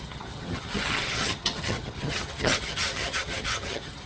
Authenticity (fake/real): fake